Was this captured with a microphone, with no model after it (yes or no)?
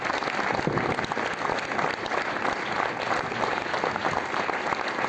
yes